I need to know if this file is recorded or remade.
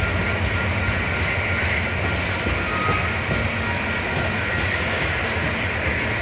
recorded